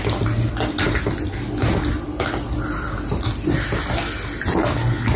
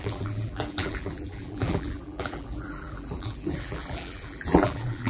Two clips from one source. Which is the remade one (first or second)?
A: second